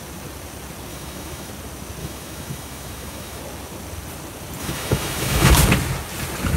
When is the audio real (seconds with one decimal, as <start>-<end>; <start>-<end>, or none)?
0.0-0.9; 1.5-2.0; 3.4-4.6; 5.5-6.6